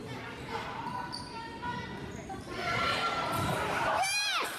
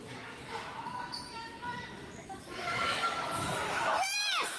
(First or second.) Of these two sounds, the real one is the first